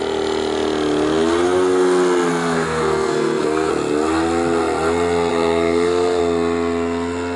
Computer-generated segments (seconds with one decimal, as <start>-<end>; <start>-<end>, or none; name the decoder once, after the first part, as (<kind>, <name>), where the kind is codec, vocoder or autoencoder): 2.3-3.7 (codec, SNAC); 5.3-6.2